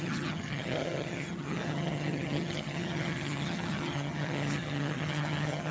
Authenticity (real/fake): fake